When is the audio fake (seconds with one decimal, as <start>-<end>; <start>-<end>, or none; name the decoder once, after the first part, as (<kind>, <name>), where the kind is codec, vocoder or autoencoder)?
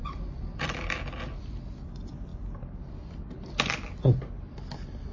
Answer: 0.0-0.6 (vocoder, BigVGAN v2)